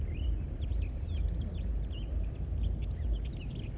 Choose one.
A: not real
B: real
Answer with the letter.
B